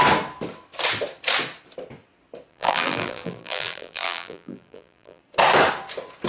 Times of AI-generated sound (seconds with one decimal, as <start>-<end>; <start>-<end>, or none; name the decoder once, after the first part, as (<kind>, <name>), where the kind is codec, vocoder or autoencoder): 2.5-5.2 (vocoder, BigVGAN v2)